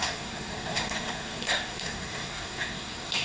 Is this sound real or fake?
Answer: fake